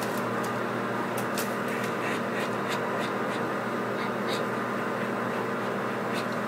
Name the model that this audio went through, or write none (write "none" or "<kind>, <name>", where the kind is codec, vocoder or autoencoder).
none